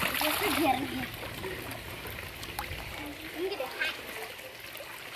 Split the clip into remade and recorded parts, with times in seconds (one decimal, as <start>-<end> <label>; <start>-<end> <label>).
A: 0.0-5.2 recorded